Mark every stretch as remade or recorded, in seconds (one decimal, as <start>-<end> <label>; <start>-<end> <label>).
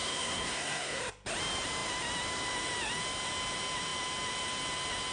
0.0-1.0 remade; 1.0-5.1 recorded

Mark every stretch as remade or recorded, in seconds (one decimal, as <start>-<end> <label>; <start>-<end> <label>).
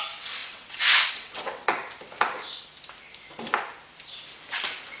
0.0-1.8 remade; 1.8-5.0 recorded